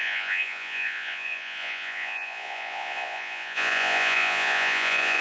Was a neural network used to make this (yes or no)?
yes